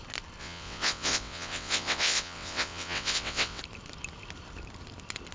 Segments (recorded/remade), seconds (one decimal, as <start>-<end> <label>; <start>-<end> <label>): 0.0-0.4 recorded; 0.4-3.6 remade; 3.6-5.3 recorded